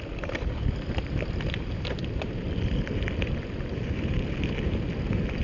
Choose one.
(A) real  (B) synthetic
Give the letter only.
A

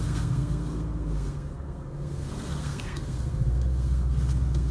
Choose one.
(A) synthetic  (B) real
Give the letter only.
A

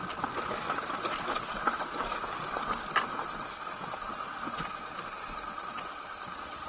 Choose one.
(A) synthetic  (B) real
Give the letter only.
B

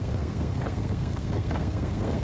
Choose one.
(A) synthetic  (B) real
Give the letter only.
A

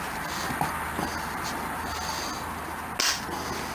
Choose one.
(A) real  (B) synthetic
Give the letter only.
A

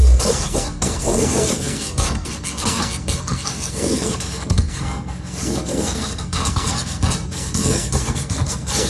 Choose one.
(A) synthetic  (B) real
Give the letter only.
A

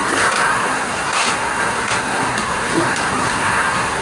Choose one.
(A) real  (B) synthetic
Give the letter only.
B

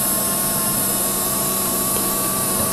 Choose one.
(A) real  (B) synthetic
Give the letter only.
A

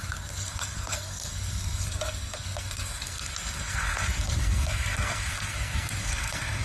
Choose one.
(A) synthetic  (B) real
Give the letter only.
A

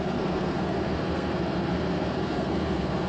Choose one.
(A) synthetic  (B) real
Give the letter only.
A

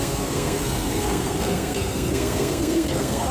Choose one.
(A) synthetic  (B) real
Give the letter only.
A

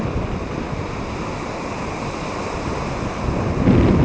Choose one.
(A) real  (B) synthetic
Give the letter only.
A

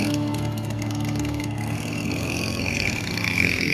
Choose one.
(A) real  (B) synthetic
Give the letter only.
B